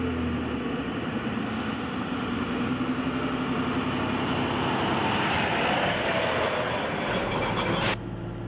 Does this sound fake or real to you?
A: real